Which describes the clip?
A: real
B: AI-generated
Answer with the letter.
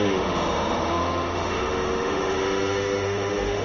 B